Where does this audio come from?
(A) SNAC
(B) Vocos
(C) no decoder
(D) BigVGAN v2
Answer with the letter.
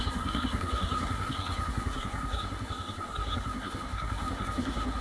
A